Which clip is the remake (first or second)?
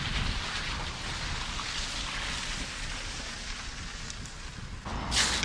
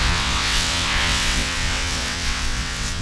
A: second